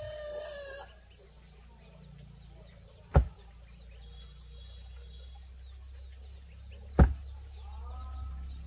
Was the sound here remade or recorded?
recorded